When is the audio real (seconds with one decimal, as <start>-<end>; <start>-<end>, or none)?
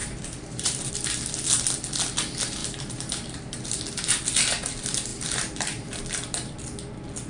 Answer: 0.9-2.6; 3.8-5.1; 6.0-7.3